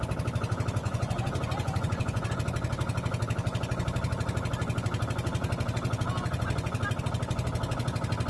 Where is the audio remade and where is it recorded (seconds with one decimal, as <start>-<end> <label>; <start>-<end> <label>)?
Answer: 0.0-0.8 recorded; 0.8-2.3 remade; 2.3-8.3 recorded